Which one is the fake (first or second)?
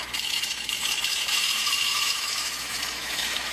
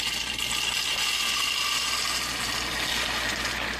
first